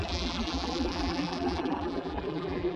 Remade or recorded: remade